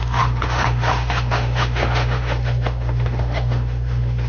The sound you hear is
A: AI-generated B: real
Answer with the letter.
A